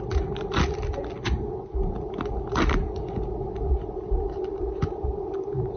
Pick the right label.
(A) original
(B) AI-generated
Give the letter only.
A